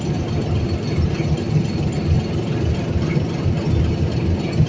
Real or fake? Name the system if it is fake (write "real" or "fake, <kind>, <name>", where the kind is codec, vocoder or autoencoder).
real